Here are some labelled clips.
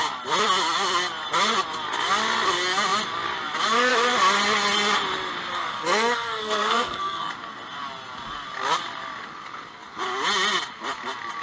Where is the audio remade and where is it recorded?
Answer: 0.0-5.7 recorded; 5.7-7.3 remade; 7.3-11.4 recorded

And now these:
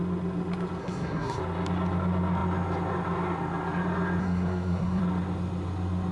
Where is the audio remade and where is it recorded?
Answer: 0.0-0.8 recorded; 0.8-1.4 remade; 1.4-4.2 recorded; 4.2-5.0 remade; 5.0-6.1 recorded

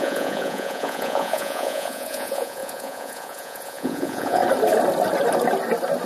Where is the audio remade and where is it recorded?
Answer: 0.0-4.4 remade; 4.4-6.1 recorded

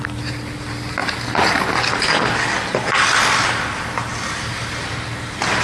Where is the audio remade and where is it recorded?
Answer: 0.0-5.6 recorded